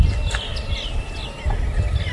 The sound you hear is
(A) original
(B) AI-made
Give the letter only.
A